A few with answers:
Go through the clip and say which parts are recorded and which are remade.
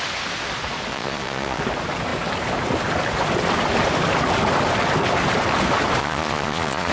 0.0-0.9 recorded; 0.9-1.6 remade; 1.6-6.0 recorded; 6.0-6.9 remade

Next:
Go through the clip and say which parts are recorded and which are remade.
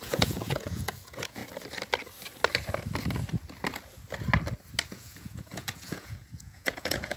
0.0-1.4 remade; 1.4-4.9 recorded; 4.9-7.2 remade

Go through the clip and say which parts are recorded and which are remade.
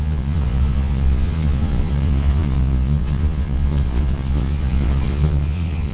0.0-5.9 remade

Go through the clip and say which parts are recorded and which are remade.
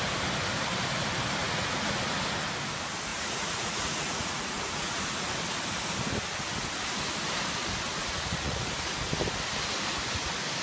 0.0-1.4 recorded; 1.4-2.0 remade; 2.0-3.1 recorded; 3.1-5.0 remade; 5.0-8.0 recorded; 8.0-8.7 remade; 8.7-10.6 recorded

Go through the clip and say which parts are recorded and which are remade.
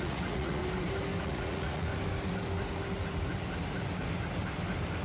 0.0-0.6 remade; 0.6-1.2 recorded; 1.2-1.9 remade; 1.9-5.0 recorded